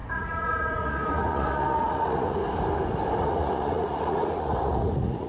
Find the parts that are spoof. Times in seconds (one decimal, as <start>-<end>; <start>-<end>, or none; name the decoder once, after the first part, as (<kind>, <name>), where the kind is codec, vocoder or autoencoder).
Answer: 0.0-2.4 (vocoder, Vocos); 3.2-5.3